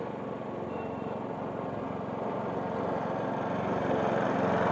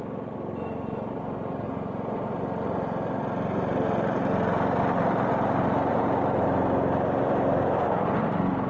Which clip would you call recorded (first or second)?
first